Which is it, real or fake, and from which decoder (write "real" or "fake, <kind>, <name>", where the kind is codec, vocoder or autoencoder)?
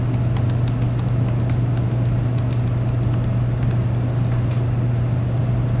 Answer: real